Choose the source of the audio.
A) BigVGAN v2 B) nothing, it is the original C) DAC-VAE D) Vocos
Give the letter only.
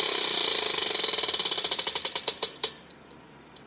B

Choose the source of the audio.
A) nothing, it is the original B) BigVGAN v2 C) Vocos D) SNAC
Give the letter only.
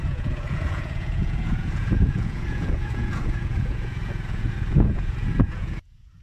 C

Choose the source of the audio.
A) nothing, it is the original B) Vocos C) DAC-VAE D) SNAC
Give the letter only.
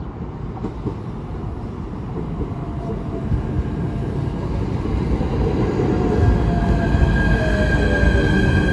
A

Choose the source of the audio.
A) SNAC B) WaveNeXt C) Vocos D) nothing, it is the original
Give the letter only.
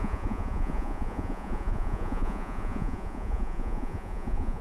C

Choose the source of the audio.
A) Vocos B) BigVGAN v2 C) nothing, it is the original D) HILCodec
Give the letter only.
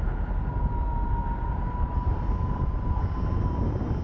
C